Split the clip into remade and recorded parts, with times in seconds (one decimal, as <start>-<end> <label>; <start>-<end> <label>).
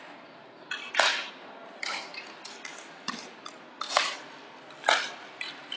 0.0-5.8 recorded